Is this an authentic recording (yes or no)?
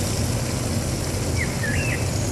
yes